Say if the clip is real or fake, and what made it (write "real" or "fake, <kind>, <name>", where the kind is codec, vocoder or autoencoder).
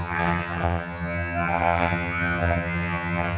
fake, vocoder, HiFi-GAN